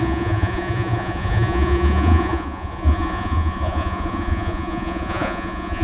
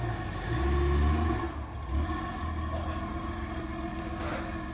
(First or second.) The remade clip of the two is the first